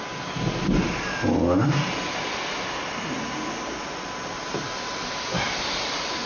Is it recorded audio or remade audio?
recorded